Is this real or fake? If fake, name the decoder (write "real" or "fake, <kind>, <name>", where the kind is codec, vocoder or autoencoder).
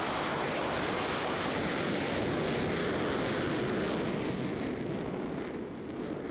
real